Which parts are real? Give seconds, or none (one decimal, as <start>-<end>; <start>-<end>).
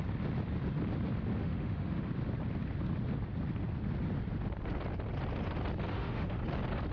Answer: 0.0-1.4; 2.1-5.9; 6.4-6.9